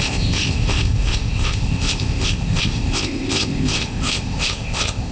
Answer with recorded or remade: remade